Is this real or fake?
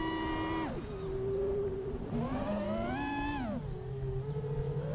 real